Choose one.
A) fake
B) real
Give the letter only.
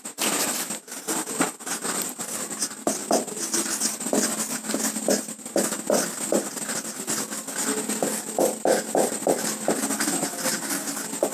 B